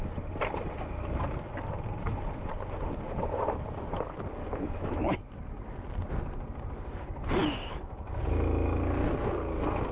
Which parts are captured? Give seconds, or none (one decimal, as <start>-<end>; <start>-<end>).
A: 0.0-4.4; 5.0-9.9